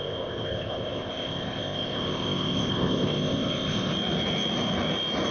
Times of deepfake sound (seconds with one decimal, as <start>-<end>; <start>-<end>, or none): 0.0-3.9

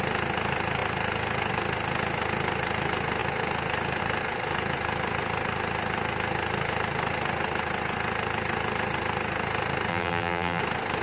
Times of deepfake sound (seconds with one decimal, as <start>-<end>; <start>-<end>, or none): 9.9-10.6

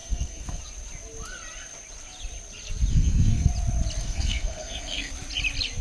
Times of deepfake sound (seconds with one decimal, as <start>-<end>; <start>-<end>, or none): 0.0-0.6; 2.9-3.5; 4.0-5.1

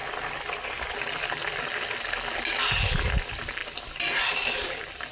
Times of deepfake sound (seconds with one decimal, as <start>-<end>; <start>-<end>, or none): none